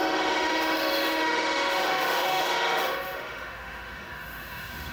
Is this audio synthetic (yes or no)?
yes